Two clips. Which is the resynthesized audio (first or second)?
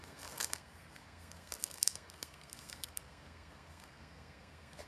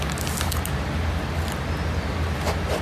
first